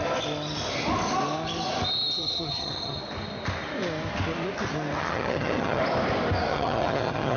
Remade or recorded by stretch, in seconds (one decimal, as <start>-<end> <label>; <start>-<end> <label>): 0.0-2.2 recorded; 2.2-3.0 remade; 3.0-5.0 recorded; 5.0-5.8 remade; 5.8-6.5 recorded; 6.5-7.4 remade